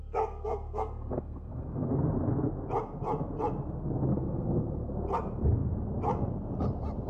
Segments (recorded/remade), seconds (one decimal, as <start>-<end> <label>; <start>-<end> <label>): 0.0-2.0 remade; 2.0-4.1 recorded; 4.1-4.9 remade; 4.9-7.1 recorded